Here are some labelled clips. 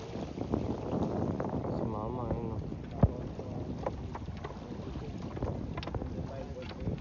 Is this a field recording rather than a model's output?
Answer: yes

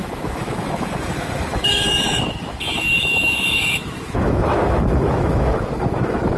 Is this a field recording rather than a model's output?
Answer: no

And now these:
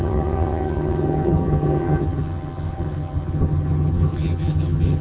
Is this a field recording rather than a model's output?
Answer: no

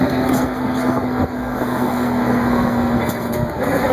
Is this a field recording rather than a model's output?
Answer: no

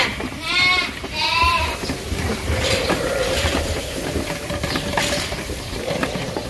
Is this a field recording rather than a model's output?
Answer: no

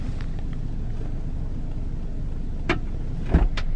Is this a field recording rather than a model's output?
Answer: yes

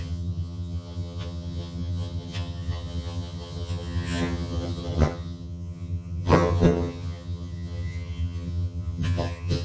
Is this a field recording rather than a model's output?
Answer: no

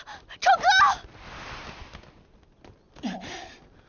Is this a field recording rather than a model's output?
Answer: yes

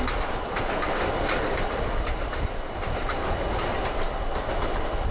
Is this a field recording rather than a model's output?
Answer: yes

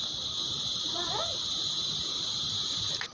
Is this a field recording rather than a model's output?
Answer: yes